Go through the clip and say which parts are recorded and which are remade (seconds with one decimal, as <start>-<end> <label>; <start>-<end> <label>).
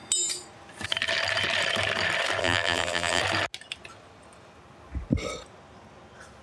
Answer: 0.0-2.4 recorded; 2.4-3.2 remade; 3.2-6.4 recorded